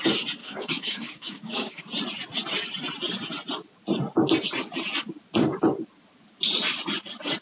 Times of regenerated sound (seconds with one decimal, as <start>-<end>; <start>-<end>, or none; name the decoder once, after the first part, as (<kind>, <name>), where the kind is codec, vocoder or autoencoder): 0.4-1.8 (codec, DAC)